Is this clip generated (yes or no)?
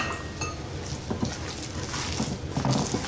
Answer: no